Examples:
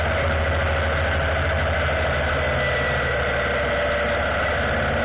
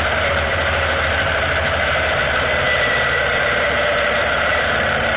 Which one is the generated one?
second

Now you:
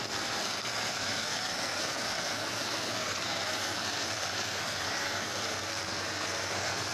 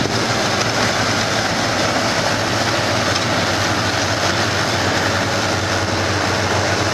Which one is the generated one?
first